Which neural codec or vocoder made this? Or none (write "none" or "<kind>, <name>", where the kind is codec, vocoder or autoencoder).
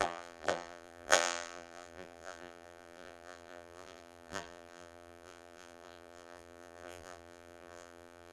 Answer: vocoder, BigVGAN v2